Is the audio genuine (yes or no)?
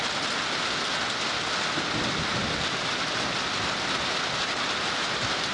yes